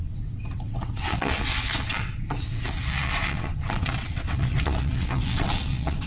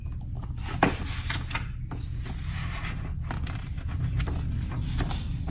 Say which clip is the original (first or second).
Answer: second